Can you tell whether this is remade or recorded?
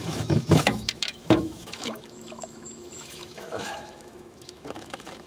remade